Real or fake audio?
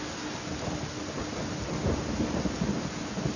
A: real